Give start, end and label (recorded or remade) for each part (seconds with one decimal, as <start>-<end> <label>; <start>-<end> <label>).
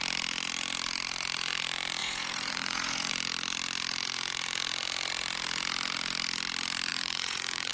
0.0-2.0 recorded; 2.0-3.1 remade; 3.1-6.9 recorded; 6.9-7.7 remade